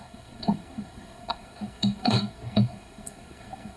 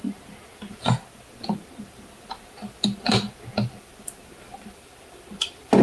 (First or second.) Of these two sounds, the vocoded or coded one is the first